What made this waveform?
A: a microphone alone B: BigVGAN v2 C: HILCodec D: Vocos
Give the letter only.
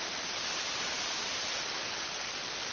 A